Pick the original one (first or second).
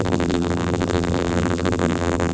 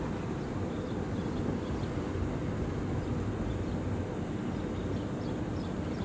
second